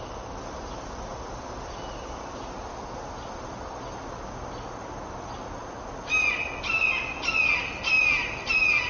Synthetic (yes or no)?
no